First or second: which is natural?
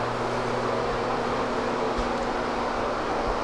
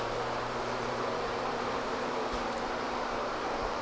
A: first